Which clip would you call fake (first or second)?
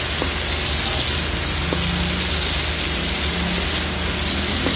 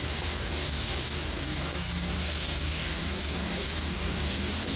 second